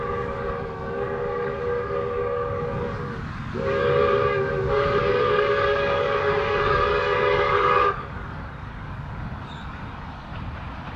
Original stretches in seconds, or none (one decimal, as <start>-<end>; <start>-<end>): 10.3-11.0